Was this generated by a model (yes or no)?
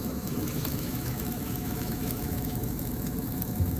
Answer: yes